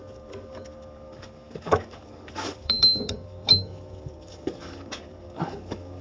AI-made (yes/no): yes